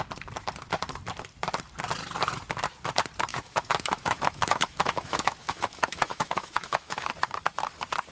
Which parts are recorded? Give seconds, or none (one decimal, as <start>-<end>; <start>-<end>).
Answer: 0.0-3.3; 7.1-8.1